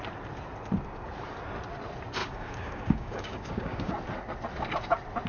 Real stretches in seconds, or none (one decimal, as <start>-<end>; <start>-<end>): 0.0-2.2; 3.9-5.3